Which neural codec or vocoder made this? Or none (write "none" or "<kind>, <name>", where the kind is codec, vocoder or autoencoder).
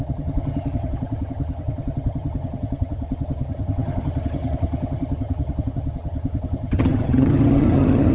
vocoder, HiFi-GAN